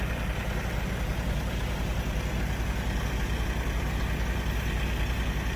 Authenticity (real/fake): real